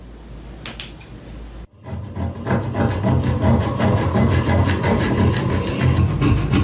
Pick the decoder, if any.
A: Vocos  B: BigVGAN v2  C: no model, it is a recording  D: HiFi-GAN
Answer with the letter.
C